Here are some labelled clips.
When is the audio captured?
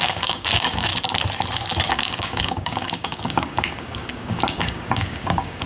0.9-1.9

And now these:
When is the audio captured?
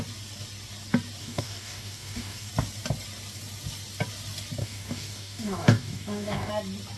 0.0-1.2; 2.5-4.6; 6.5-7.0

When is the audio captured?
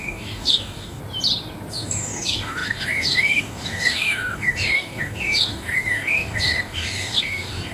1.0-1.7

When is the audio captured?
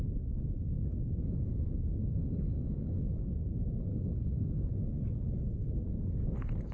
0.0-2.0; 3.0-3.9; 4.7-6.7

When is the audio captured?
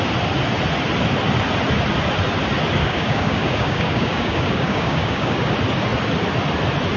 0.0-2.8; 5.5-7.0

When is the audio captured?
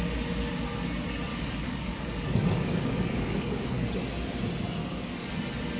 0.0-1.3; 3.9-4.8; 5.3-5.8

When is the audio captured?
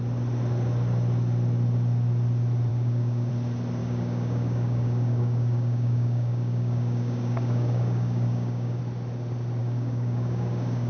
0.0-2.7; 3.3-3.8; 8.8-9.6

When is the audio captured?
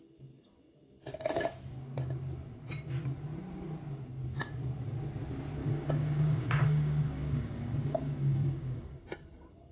0.0-5.6; 9.0-9.7